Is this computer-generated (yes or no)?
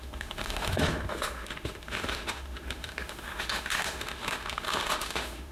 yes